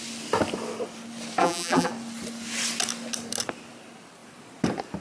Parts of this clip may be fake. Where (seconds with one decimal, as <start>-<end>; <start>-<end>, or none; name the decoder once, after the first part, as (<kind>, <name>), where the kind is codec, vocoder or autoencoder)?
1.4-1.9 (vocoder, BigVGAN v2)